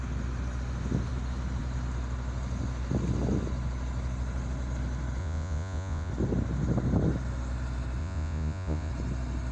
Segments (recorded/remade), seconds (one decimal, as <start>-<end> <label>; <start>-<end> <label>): 0.0-5.2 recorded; 5.2-6.1 remade; 6.1-8.0 recorded; 8.0-8.9 remade; 8.9-9.5 recorded